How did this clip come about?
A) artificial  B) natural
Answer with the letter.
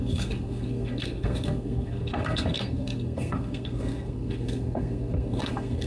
A